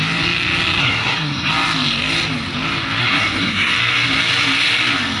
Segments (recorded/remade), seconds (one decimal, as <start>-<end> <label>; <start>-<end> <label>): 0.0-0.8 recorded; 0.8-1.5 remade; 1.5-3.0 recorded; 3.0-3.7 remade; 3.7-5.2 recorded